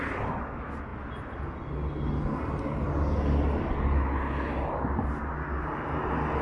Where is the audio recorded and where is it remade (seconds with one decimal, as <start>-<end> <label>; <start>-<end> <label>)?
0.0-6.4 recorded